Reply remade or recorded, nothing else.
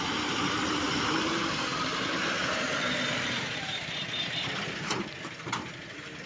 remade